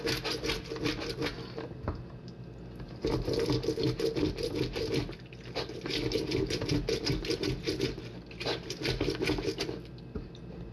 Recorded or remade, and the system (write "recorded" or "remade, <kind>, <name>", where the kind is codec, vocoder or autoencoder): recorded